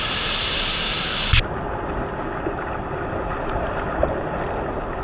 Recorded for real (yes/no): yes